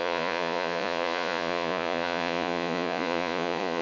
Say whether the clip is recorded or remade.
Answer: remade